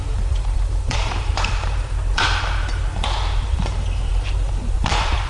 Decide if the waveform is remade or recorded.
remade